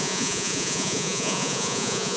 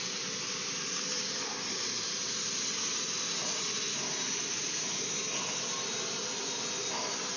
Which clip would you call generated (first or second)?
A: first